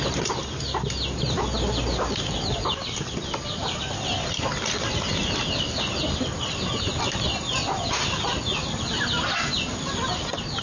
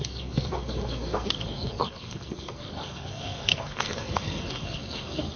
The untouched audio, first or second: first